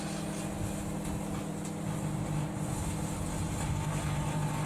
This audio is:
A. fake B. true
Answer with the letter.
B